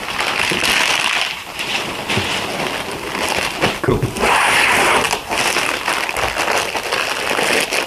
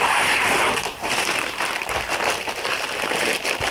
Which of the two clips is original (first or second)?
first